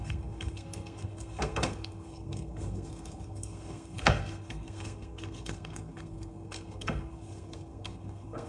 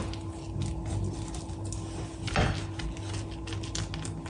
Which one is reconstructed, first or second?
first